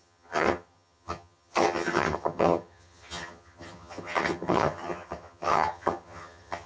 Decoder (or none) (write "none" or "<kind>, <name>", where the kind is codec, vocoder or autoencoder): vocoder, HiFi-GAN